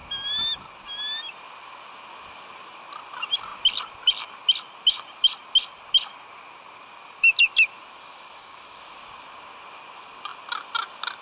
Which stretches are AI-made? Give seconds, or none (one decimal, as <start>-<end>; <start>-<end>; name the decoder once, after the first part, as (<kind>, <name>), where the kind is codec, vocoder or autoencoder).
8.0-8.8 (codec, DAC)